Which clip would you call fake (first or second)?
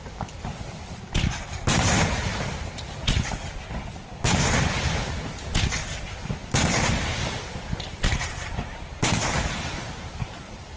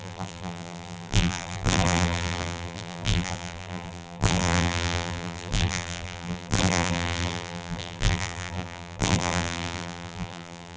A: second